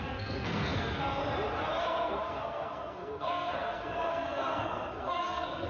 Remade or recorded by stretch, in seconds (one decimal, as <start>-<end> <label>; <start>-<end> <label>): 0.0-1.2 remade; 1.2-1.8 recorded; 1.8-5.7 remade